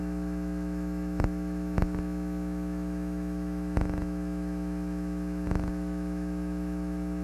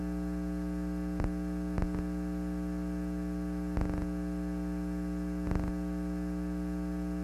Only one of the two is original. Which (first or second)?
second